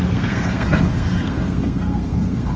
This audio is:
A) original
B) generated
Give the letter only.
B